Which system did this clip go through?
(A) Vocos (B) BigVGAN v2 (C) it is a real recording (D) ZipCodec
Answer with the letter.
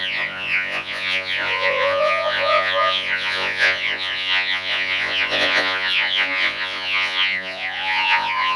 A